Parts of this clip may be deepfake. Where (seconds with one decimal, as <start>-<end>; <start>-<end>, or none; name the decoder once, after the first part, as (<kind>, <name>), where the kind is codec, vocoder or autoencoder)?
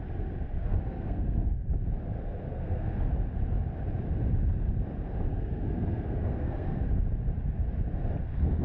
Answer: 0.6-1.7 (codec, SNAC); 2.5-3.1; 5.3-6.8